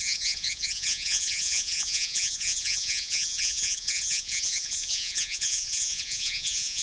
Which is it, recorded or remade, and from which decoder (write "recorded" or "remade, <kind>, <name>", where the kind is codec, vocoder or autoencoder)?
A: remade, vocoder, Vocos